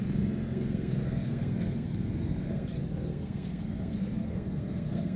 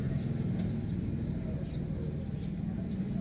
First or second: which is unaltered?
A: second